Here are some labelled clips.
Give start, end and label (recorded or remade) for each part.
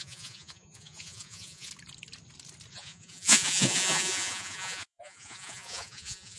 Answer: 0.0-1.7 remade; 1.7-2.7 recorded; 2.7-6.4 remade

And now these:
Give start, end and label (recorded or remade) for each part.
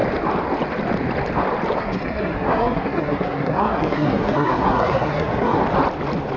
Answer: 0.0-1.8 recorded; 1.8-5.6 remade; 5.6-6.4 recorded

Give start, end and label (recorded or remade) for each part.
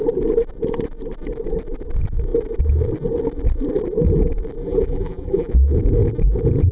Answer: 0.0-4.6 recorded; 4.6-5.5 remade; 5.5-6.7 recorded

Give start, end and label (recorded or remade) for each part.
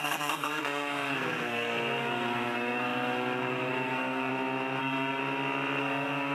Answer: 0.0-4.3 remade; 4.3-4.8 recorded; 4.8-5.2 remade; 5.2-5.8 recorded; 5.8-6.3 remade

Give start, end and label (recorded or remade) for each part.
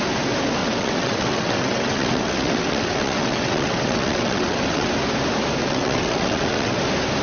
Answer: 0.0-0.6 recorded; 0.6-4.9 remade; 4.9-5.6 recorded; 5.6-6.8 remade; 6.8-7.2 recorded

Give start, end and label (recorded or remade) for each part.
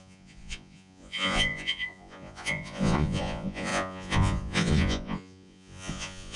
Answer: 0.0-6.4 remade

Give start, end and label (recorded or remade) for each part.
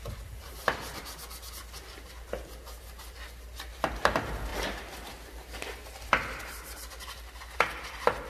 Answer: 0.0-8.3 recorded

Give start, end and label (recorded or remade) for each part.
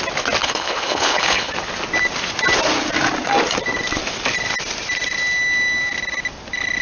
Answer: 0.0-0.4 recorded; 0.4-1.5 remade; 1.5-6.8 recorded